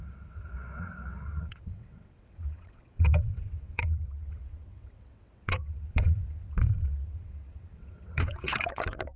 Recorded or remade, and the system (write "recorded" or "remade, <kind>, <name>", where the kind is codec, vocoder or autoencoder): remade, vocoder, WaveNeXt